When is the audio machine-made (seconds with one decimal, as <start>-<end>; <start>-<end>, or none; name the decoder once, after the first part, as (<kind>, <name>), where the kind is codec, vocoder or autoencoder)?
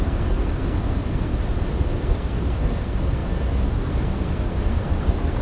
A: 0.0-1.3 (codec, SNAC); 2.0-5.4